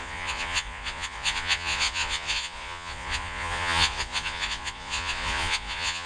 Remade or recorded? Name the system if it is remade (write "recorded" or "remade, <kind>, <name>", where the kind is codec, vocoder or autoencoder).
remade, vocoder, Vocos